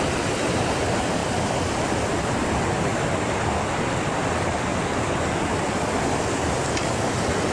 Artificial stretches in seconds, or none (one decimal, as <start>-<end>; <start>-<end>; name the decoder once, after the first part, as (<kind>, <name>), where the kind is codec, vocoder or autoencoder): 2.9-4.0 (vocoder, BigVGAN v2)